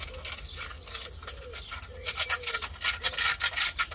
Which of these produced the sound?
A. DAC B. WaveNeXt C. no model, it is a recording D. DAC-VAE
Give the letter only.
C